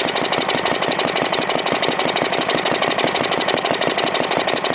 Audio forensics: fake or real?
fake